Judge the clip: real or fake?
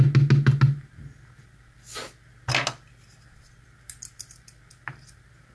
real